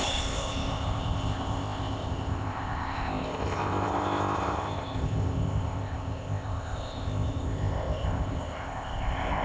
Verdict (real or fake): fake